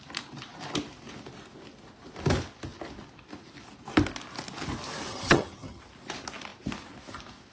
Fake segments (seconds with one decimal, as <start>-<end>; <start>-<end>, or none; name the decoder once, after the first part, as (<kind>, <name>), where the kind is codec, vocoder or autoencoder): 5.1-5.8 (vocoder, HiFi-GAN)